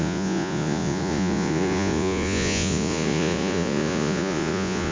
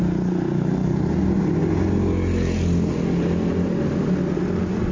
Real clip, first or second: second